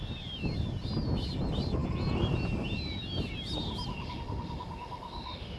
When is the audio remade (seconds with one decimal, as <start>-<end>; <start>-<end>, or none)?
3.9-5.6